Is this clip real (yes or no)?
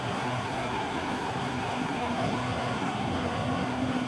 no